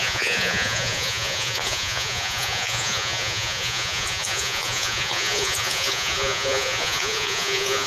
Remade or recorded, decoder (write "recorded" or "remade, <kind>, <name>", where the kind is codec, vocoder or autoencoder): remade, vocoder, Vocos